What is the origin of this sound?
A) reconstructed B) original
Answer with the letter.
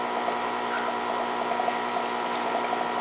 B